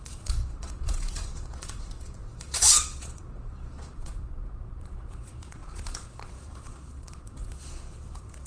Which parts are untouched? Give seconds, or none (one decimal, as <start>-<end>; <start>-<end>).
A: none